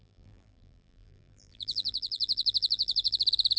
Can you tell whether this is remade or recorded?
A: remade